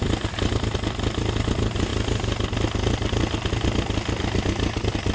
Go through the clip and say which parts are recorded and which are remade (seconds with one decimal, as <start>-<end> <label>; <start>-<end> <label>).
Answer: 0.0-5.1 recorded